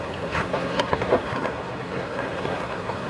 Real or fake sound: fake